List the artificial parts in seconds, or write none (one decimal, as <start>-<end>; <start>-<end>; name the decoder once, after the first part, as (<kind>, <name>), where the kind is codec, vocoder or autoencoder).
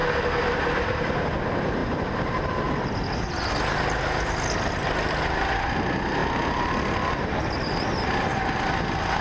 none